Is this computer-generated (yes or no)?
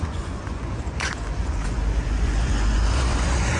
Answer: yes